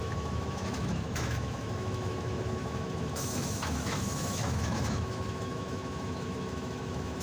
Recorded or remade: remade